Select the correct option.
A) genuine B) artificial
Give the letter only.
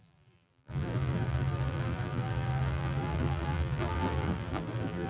B